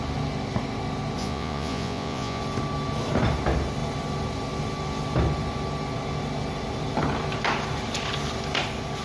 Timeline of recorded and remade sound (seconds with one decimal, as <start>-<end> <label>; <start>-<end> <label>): 0.0-1.2 recorded; 1.2-2.4 remade; 2.4-9.0 recorded